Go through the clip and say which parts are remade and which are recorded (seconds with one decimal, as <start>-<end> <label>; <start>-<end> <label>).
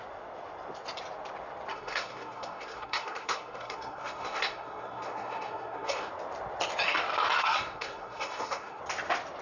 0.0-1.7 recorded; 1.7-6.1 remade; 6.1-7.4 recorded; 7.4-8.8 remade; 8.8-9.4 recorded